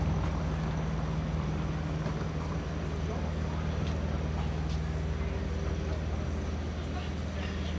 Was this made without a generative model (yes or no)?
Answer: yes